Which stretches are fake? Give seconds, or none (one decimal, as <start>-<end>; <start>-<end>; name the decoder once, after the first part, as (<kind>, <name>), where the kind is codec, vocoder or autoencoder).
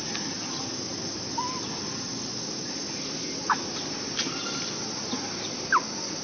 none